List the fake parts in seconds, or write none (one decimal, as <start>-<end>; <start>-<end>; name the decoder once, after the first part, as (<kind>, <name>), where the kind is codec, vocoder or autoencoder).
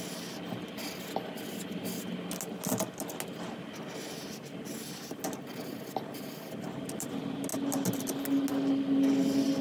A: none